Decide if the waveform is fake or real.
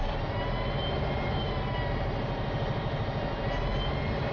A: real